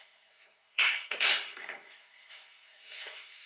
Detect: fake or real fake